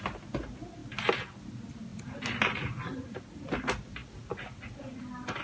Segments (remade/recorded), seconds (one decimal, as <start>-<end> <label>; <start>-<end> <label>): 0.0-5.4 recorded